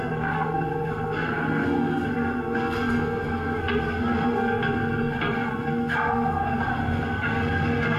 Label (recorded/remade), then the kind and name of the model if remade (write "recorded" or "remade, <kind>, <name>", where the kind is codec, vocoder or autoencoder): remade, codec, SNAC